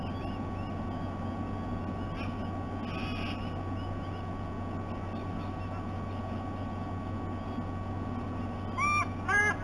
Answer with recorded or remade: recorded